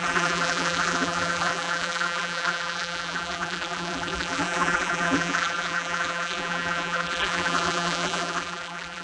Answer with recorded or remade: remade